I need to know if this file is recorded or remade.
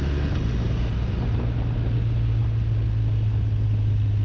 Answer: recorded